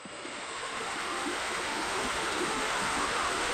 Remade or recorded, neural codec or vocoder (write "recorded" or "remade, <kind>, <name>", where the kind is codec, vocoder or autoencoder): remade, autoencoder, DAC-VAE